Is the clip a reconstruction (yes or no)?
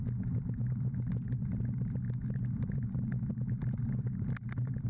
no